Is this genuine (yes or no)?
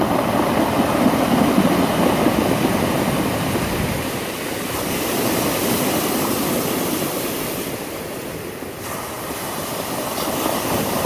yes